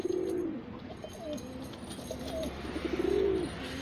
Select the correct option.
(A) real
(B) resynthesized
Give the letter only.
A